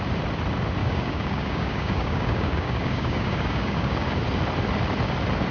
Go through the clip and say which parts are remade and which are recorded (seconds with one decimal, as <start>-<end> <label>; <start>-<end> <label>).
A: 0.0-0.8 recorded; 0.8-4.1 remade; 4.1-5.5 recorded

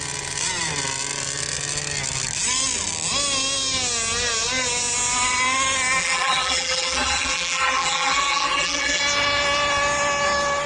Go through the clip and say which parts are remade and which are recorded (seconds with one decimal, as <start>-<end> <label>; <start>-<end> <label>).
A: 0.0-6.0 recorded; 6.0-9.0 remade; 9.0-10.7 recorded

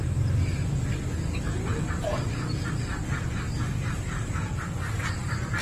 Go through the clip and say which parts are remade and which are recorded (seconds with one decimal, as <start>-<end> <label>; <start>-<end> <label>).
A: 0.0-1.7 recorded; 1.7-4.6 remade; 4.6-5.6 recorded